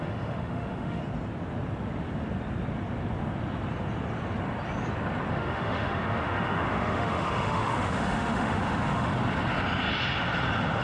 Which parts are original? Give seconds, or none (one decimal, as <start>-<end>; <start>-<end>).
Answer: 1.0-5.3; 9.1-10.8